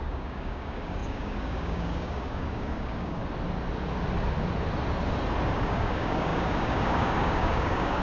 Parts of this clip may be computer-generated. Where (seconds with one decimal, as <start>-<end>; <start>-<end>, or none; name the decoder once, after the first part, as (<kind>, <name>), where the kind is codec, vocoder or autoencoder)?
0.0-3.2 (codec, DAC); 5.6-8.0